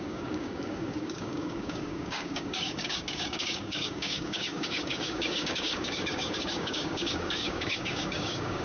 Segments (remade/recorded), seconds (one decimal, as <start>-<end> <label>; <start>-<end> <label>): 0.0-8.6 remade